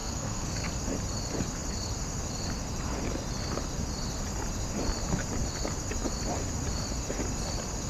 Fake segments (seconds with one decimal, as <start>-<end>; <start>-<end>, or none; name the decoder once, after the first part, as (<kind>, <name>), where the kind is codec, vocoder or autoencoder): 0.0-0.7 (codec, SNAC)